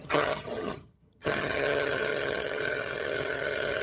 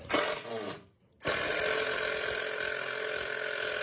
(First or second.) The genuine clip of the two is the second